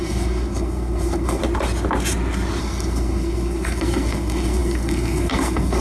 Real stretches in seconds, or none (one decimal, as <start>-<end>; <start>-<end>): 1.4-2.6